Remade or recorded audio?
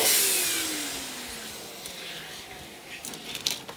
recorded